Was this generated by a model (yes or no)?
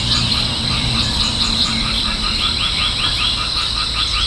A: yes